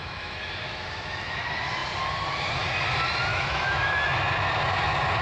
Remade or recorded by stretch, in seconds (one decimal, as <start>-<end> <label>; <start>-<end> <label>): 0.0-1.4 remade; 1.4-3.3 recorded; 3.3-4.1 remade; 4.1-5.2 recorded